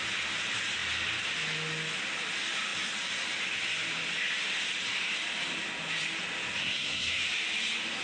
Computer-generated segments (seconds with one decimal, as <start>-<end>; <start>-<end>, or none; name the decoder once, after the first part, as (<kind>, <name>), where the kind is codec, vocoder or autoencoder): 6.6-7.2 (codec, SNAC)